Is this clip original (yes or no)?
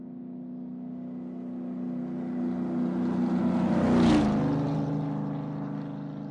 yes